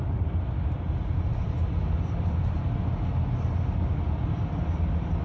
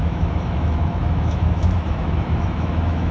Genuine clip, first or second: first